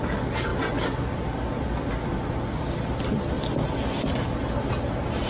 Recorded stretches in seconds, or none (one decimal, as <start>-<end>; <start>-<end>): 0.0-5.3